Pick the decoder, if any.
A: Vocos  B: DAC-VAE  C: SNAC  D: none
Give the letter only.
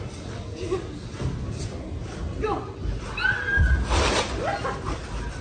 D